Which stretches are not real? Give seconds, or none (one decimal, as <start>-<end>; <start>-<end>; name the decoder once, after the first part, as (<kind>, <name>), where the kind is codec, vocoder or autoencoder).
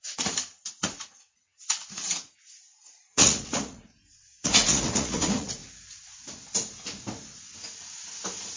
0.0-5.6 (vocoder, Vocos)